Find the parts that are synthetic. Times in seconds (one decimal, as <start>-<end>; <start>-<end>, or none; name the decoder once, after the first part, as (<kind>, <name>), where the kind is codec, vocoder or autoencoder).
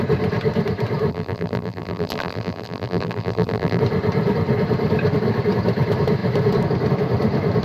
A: 1.1-3.8 (vocoder, BigVGAN v2)